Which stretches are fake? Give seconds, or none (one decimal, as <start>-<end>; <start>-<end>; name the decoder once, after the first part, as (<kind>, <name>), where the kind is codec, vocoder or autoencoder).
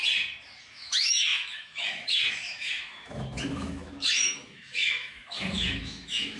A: 0.7-6.4 (autoencoder, DAC-VAE)